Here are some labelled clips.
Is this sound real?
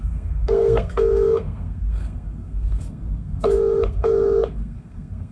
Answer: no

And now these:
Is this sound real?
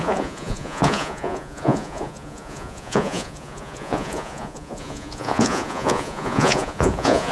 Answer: no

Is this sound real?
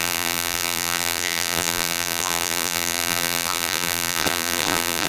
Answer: no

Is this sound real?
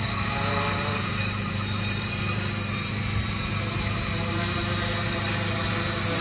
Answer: no